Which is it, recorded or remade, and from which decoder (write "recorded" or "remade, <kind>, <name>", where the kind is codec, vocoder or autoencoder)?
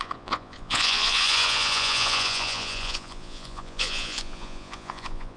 remade, vocoder, Vocos